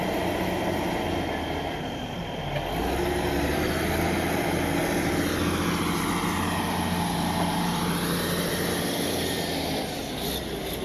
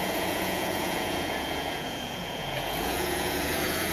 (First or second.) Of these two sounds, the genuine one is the first